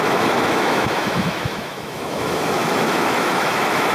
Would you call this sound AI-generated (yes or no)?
yes